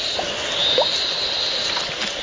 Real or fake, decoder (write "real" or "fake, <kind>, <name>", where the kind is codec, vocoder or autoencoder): real